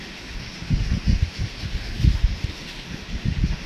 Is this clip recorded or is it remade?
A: remade